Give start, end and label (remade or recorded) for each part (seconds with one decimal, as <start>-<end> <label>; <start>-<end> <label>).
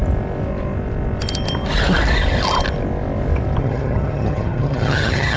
0.0-3.6 recorded; 3.6-5.4 remade